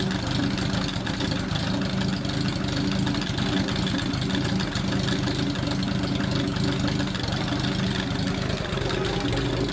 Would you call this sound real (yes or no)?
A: yes